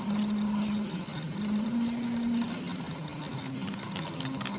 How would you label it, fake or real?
real